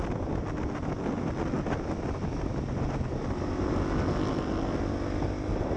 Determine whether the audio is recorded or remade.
recorded